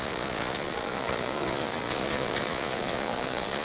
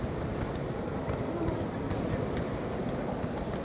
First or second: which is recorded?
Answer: second